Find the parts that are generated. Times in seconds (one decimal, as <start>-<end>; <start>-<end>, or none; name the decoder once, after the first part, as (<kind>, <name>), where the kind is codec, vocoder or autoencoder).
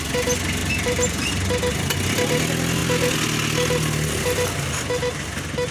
0.6-1.3 (vocoder, BigVGAN v2)